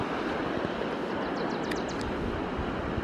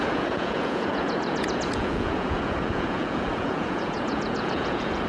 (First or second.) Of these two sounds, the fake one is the second